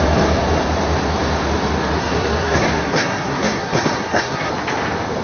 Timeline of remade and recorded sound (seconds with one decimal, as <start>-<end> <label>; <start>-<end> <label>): 0.0-2.0 recorded; 2.0-4.5 remade; 4.5-5.2 recorded